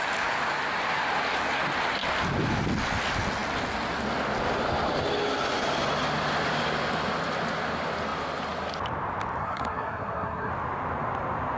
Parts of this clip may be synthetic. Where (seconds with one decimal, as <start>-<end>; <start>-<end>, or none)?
9.4-10.5